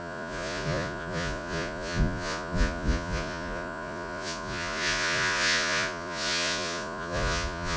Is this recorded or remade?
remade